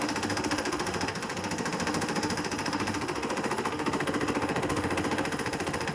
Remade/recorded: remade